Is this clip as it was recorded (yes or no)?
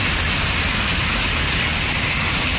yes